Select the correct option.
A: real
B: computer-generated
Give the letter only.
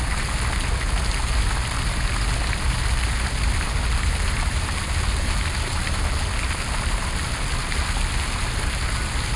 A